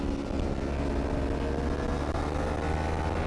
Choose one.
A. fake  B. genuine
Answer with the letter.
B